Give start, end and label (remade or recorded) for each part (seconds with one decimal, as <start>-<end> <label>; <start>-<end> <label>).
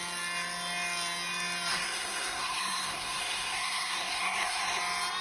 0.0-1.7 recorded; 1.7-4.8 remade; 4.8-5.2 recorded